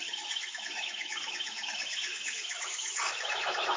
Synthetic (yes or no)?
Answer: yes